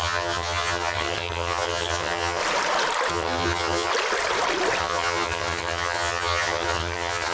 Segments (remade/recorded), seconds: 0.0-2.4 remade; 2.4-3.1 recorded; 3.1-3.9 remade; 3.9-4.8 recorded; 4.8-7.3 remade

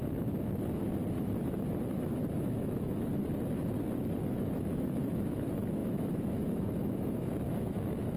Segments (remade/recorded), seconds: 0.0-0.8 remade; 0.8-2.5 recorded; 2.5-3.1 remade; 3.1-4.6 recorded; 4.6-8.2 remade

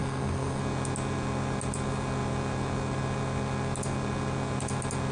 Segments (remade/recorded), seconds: 0.0-0.6 remade; 0.6-5.1 recorded

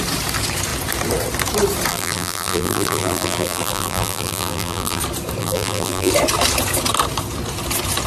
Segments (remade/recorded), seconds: 0.0-1.9 recorded; 1.9-5.0 remade; 5.0-5.4 recorded; 5.4-6.1 remade; 6.1-8.1 recorded